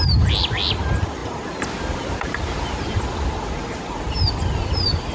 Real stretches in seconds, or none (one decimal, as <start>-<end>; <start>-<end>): 0.0-5.1